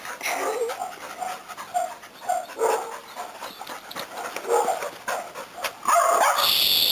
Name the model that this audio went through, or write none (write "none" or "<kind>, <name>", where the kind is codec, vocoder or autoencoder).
none